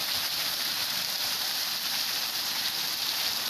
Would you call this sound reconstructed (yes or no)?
yes